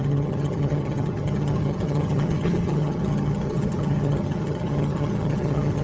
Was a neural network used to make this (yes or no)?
yes